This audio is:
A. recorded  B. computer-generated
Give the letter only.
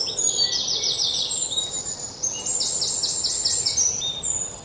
A